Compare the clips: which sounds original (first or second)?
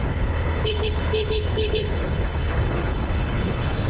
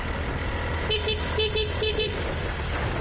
second